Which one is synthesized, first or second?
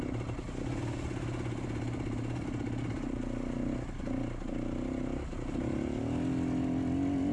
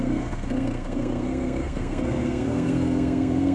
second